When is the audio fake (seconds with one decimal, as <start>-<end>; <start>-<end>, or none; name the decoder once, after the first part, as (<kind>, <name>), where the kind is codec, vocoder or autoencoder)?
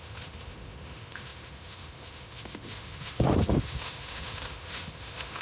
0.0-5.4 (autoencoder, DAC-VAE)